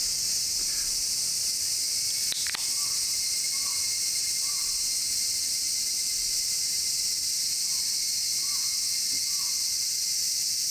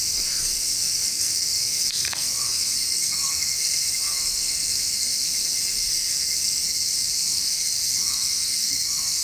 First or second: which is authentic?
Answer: first